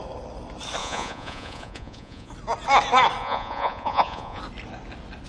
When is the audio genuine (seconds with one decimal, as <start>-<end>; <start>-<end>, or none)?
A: 0.0-0.8; 2.3-3.2; 4.4-5.3